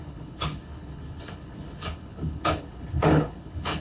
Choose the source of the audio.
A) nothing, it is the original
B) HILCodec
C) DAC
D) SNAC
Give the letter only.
B